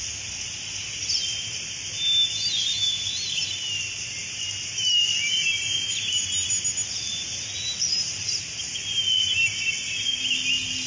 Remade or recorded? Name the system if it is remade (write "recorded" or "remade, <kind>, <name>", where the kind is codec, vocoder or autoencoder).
recorded